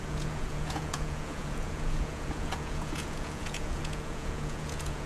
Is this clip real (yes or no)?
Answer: no